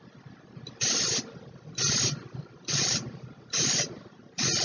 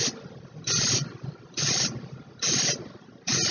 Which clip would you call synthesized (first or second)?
second